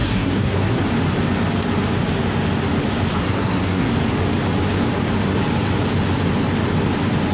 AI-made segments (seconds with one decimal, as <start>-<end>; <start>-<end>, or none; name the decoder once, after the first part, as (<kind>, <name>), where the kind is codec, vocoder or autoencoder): 0.0-0.8 (codec, SNAC); 3.2-3.9